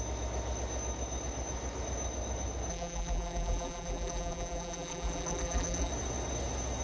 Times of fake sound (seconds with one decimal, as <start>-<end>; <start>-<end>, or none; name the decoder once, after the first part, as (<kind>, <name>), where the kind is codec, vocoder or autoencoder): 2.7-5.9 (vocoder, BigVGAN v2)